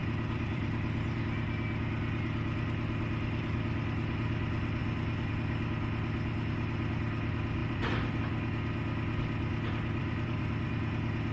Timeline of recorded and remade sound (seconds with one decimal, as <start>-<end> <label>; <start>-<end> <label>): 0.0-1.2 remade; 1.2-7.6 recorded; 7.6-8.2 remade; 8.2-10.0 recorded; 10.0-10.7 remade; 10.7-11.3 recorded